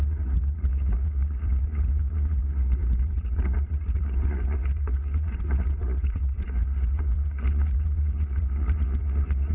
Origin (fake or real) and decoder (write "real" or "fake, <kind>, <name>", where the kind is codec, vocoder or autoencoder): fake, vocoder, Vocos